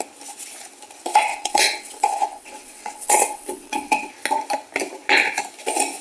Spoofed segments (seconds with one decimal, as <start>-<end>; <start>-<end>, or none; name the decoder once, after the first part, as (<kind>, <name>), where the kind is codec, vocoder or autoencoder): 1.3-4.1 (vocoder, WaveNeXt)